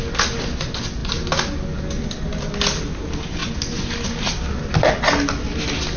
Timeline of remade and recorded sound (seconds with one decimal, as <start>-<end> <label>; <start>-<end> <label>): 0.0-6.0 recorded